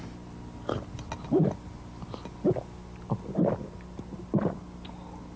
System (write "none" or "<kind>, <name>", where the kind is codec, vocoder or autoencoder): none